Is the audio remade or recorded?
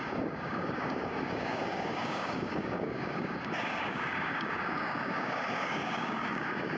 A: remade